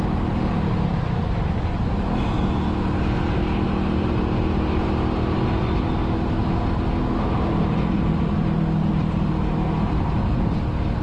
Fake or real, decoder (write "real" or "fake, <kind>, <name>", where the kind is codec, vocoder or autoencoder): real